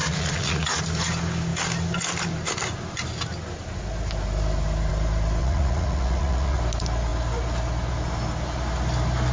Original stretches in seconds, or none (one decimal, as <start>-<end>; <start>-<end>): 0.8-5.4; 6.6-9.3